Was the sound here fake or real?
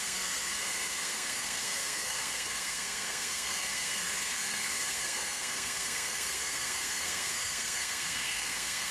fake